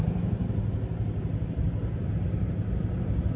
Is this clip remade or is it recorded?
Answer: recorded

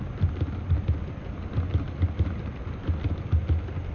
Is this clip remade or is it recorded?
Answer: recorded